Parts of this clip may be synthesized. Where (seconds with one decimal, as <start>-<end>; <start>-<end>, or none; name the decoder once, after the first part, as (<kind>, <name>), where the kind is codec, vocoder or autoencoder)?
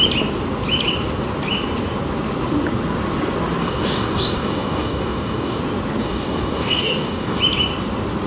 3.6-5.6 (codec, DAC); 6.0-7.4